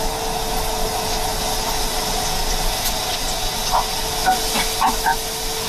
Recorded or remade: recorded